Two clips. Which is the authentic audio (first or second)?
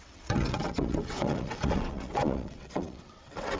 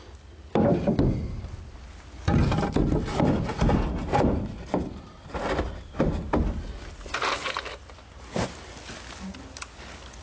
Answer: second